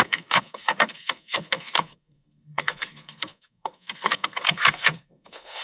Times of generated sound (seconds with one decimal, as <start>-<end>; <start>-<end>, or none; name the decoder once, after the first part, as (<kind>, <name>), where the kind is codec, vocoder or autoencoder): 0.0-5.6 (codec, SNAC)